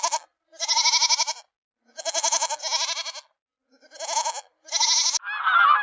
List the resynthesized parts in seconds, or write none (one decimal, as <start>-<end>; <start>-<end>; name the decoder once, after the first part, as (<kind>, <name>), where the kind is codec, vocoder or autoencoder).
none